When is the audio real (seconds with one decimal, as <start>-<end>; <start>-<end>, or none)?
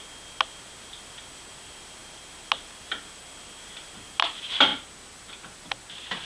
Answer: 0.0-6.3